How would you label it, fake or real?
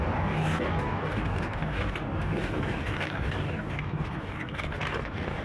fake